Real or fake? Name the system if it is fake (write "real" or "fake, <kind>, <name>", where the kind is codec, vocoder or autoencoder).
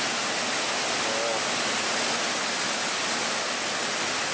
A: real